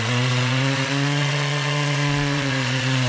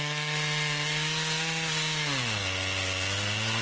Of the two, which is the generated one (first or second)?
first